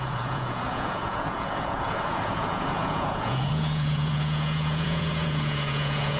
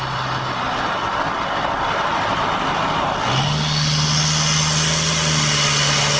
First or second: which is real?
second